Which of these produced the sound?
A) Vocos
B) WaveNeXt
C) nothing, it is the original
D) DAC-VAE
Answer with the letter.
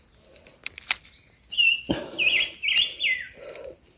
C